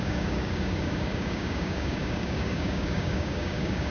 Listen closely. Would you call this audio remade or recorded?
remade